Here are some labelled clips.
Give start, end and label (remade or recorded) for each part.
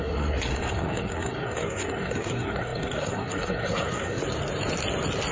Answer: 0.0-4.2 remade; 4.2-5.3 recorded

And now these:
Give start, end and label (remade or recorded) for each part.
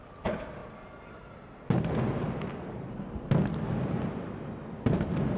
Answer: 0.0-5.4 recorded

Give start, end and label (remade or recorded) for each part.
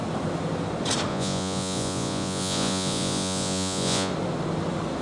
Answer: 0.0-1.1 recorded; 1.1-4.1 remade; 4.1-5.0 recorded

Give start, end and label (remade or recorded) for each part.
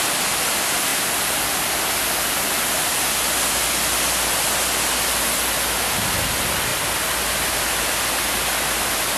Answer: 0.0-9.2 recorded